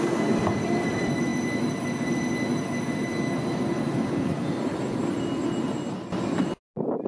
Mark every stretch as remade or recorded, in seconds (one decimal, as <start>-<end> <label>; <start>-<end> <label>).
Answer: 0.0-7.1 recorded